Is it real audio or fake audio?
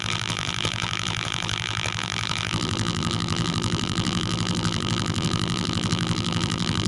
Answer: fake